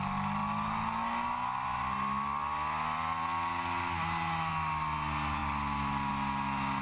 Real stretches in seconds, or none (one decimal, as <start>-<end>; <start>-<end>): 0.0-6.8